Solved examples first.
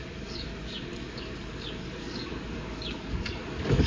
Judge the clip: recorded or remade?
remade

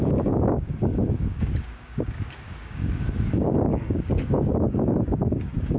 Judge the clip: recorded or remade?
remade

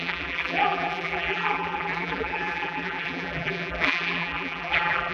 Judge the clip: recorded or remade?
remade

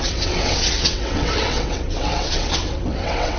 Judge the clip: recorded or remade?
remade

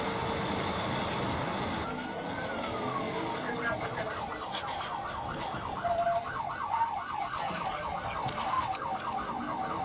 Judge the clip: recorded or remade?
recorded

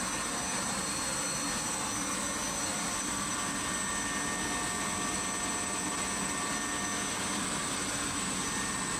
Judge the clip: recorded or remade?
recorded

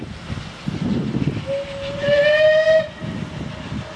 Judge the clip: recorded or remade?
recorded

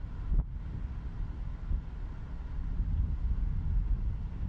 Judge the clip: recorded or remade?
recorded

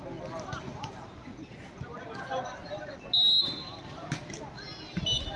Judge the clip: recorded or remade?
recorded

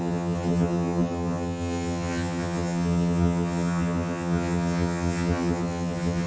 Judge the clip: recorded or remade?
remade